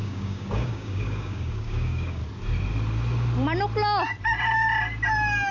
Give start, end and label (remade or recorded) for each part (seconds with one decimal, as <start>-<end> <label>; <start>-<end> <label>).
0.0-2.2 remade; 2.2-5.5 recorded